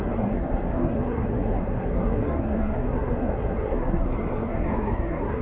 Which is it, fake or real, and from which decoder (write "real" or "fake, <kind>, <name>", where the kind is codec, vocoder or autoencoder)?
fake, codec, SNAC